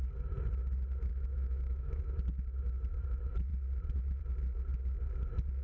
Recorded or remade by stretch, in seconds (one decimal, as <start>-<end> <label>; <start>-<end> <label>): 0.0-1.1 recorded; 1.1-2.0 remade; 2.0-5.6 recorded